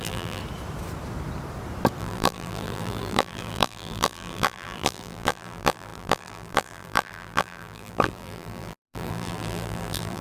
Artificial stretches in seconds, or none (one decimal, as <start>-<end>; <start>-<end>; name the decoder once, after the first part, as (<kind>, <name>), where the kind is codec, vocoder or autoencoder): 0.0-0.4 (vocoder, BigVGAN v2); 2.0-10.2

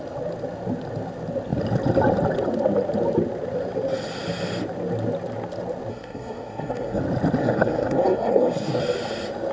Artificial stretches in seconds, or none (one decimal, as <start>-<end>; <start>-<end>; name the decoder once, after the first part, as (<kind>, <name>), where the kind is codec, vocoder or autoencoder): 5.9-7.0 (codec, SNAC); 7.4-8.8

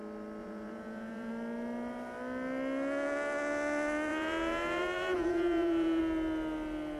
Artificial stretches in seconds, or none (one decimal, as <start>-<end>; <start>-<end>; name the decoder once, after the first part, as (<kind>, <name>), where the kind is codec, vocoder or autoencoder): 0.4-1.3 (vocoder, Vocos); 4.1-6.0

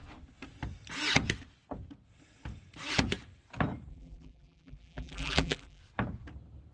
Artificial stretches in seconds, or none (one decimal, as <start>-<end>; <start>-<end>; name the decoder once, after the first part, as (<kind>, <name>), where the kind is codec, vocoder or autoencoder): 3.9-5.8 (vocoder, BigVGAN v2)

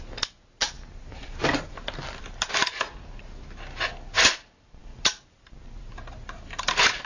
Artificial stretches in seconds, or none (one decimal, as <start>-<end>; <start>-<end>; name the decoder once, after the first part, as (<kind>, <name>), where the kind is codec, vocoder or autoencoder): 0.6-2.2 (vocoder, BigVGAN v2); 4.8-5.8